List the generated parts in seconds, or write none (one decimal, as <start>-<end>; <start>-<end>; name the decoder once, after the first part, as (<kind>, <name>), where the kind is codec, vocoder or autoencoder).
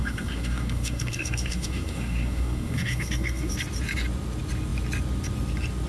0.0-3.5 (codec, SNAC)